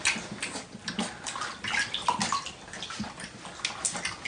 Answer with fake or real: real